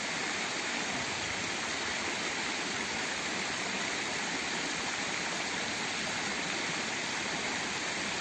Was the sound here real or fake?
real